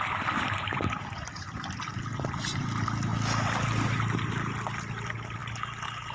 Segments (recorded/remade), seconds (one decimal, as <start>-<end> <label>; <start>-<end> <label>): 0.0-1.9 remade; 1.9-2.6 recorded; 2.6-6.1 remade